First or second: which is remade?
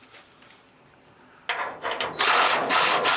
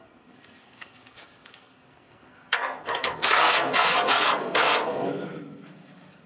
second